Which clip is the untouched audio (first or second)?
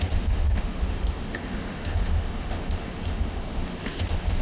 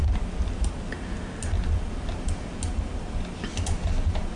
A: second